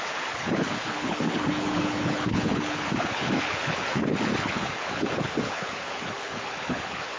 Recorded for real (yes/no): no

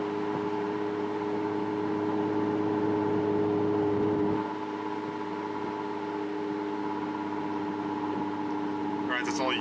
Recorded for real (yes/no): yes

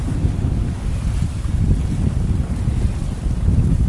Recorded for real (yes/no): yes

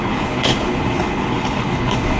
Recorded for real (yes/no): no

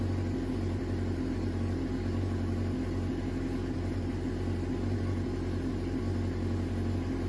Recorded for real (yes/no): yes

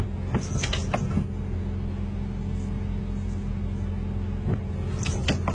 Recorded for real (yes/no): yes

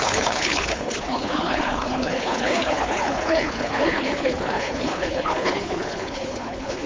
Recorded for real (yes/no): no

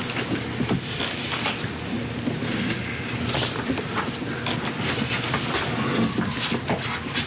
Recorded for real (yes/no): yes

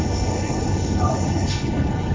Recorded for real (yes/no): no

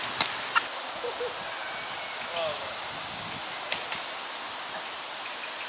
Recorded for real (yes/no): yes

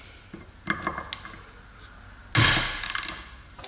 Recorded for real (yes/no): yes